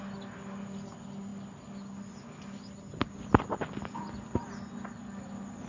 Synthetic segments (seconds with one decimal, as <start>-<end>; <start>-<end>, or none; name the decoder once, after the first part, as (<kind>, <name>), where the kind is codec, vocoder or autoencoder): none